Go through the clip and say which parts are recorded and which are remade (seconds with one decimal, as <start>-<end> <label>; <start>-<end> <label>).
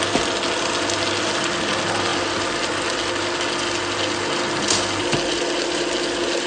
0.0-6.5 recorded